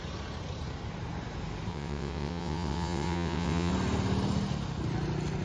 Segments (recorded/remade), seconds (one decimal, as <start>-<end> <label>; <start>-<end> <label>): 0.0-1.7 recorded; 1.7-3.7 remade; 3.7-5.4 recorded